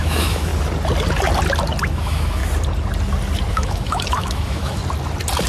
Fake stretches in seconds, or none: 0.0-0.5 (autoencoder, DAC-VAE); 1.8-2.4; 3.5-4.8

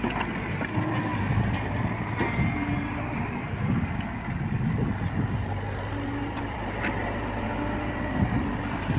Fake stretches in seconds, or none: none

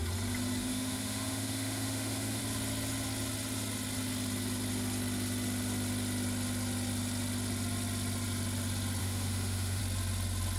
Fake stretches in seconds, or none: 0.6-2.4 (autoencoder, DAC-VAE); 9.0-9.8

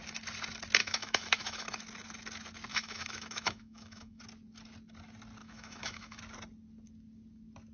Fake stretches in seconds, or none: 0.8-1.8 (autoencoder, DAC-VAE); 2.7-4.2; 5.4-6.2

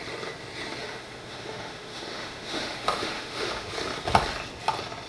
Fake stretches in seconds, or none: 0.8-3.7 (autoencoder, DAC-VAE)

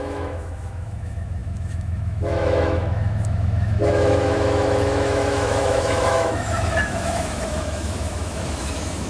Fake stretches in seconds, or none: 0.0-9.1 (autoencoder, DAC-VAE)

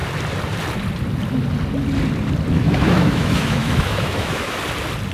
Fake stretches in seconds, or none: 2.5-4.6 (autoencoder, DAC-VAE)

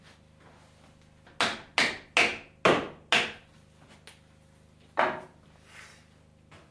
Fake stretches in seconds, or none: none